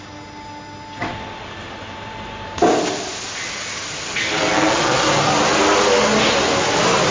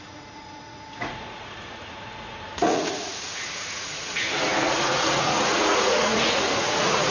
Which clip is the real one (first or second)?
first